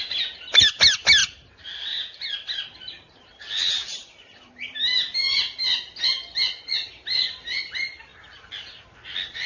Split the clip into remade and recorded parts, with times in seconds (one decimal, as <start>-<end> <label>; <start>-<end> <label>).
0.0-1.2 recorded; 1.2-2.3 remade; 2.3-3.8 recorded; 3.8-4.7 remade; 4.7-9.5 recorded